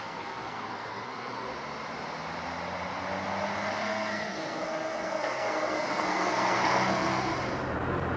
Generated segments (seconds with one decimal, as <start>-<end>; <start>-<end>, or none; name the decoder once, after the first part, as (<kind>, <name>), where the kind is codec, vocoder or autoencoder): 0.0-1.5 (codec, SNAC); 3.7-7.3